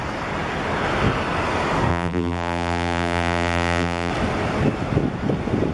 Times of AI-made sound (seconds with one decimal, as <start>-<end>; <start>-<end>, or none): 1.9-4.1